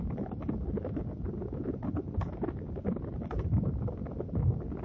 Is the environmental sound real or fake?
real